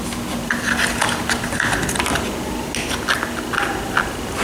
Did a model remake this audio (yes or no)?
no